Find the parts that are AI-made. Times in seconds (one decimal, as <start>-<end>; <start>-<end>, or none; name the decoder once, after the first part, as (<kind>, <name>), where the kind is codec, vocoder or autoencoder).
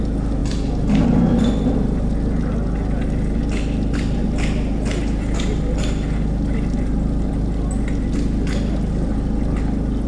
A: none